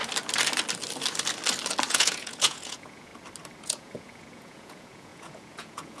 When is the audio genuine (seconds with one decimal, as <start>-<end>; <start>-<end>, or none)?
0.0-1.9; 3.1-3.6